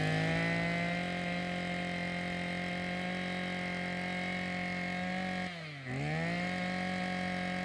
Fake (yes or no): no